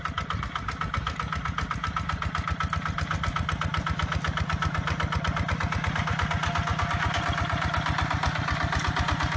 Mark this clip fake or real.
real